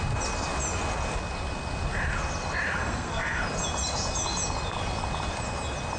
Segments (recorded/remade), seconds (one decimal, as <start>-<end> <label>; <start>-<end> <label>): 0.0-2.8 recorded; 2.8-3.4 remade; 3.4-6.0 recorded